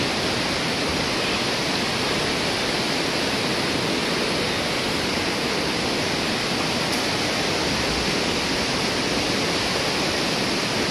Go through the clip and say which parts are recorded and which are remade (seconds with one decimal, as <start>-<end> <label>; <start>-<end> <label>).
0.0-10.9 recorded

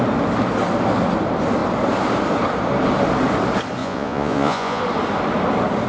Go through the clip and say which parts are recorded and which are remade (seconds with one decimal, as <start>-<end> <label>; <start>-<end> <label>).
0.0-3.8 recorded; 3.8-4.8 remade; 4.8-5.9 recorded